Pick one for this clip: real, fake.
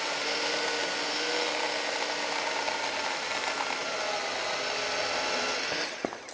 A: real